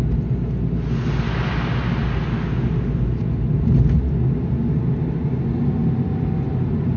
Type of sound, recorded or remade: recorded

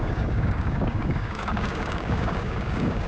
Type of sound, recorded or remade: remade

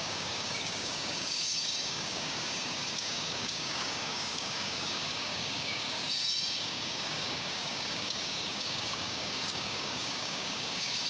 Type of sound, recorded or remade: remade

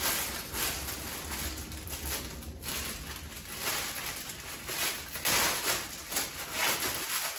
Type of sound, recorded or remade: recorded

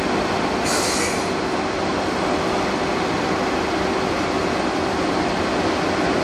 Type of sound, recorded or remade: recorded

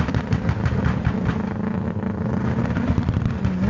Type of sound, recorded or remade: recorded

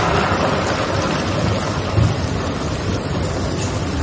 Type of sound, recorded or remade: recorded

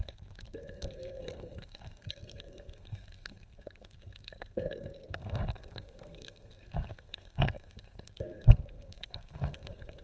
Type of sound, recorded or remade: remade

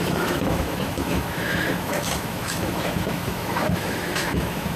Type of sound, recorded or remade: remade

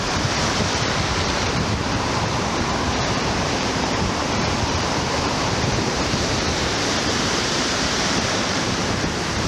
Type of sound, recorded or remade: remade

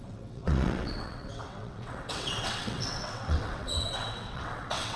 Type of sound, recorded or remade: remade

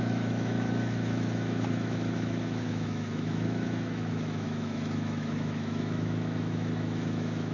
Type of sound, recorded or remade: remade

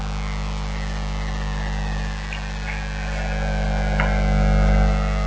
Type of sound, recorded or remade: recorded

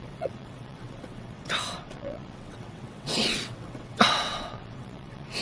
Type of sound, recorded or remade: remade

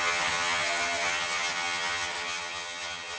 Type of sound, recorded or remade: remade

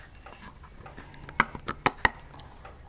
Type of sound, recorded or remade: recorded